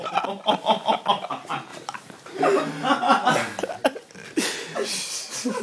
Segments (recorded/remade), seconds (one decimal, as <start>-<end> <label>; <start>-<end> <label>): 0.0-1.7 recorded; 1.7-2.4 remade; 2.4-5.6 recorded